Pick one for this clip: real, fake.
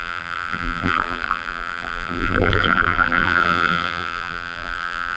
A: fake